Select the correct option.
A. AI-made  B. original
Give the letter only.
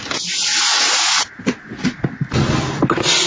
B